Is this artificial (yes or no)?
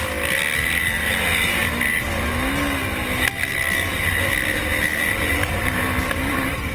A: no